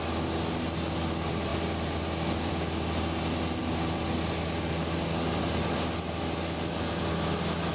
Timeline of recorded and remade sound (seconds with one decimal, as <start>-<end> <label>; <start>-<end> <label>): 0.0-7.7 recorded